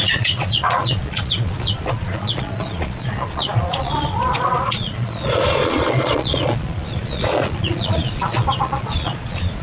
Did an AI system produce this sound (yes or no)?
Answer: yes